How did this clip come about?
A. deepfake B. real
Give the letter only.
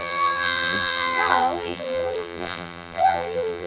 A